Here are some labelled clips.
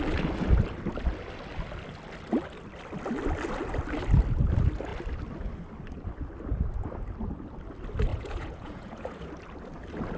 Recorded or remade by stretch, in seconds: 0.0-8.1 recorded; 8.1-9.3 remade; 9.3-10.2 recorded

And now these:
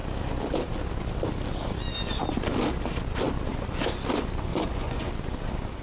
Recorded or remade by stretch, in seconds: 0.0-4.5 recorded; 4.5-5.1 remade; 5.1-5.8 recorded

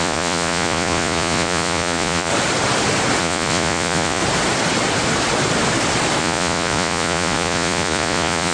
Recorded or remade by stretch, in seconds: 0.0-2.3 remade; 2.3-3.2 recorded; 3.2-4.2 remade; 4.2-6.2 recorded; 6.2-8.5 remade

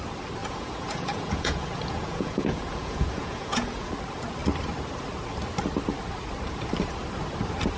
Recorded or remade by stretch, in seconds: 0.0-0.4 recorded; 0.4-3.9 remade; 3.9-7.8 recorded

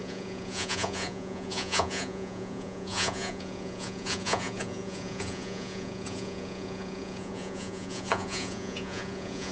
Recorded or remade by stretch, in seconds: 0.0-9.5 remade

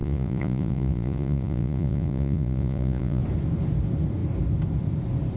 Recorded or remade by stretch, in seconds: 0.0-3.2 remade; 3.2-5.4 recorded